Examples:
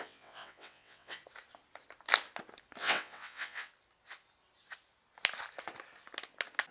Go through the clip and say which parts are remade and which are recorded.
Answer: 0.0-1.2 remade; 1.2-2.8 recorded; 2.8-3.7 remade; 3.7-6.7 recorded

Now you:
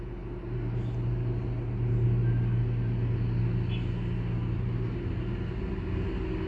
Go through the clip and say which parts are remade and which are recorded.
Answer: 0.0-6.5 recorded

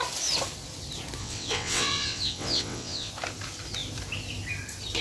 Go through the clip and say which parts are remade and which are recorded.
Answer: 0.0-1.2 recorded; 1.2-3.1 remade; 3.1-5.0 recorded

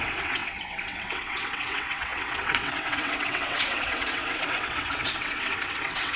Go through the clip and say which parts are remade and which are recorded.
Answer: 0.0-6.2 remade

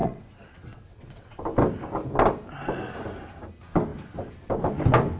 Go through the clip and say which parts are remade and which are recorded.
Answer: 0.0-1.4 remade; 1.4-5.2 recorded

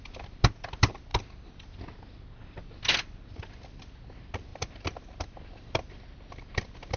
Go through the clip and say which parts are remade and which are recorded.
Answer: 0.0-7.0 recorded

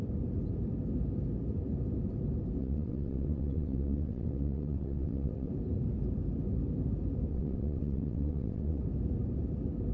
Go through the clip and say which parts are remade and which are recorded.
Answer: 0.0-2.6 recorded; 2.6-5.5 remade; 5.5-7.3 recorded; 7.3-8.8 remade; 8.8-9.9 recorded